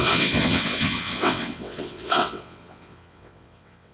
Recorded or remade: remade